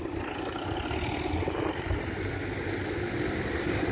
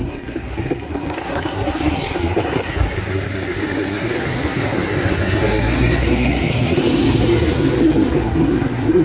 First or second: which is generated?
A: second